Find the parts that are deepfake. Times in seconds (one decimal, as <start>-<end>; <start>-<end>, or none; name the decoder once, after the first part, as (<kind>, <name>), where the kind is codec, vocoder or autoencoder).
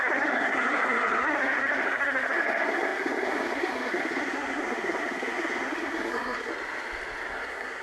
0.0-6.5 (codec, SNAC); 7.3-7.8